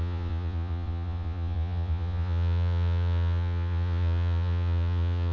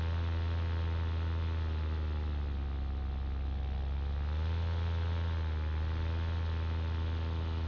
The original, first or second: second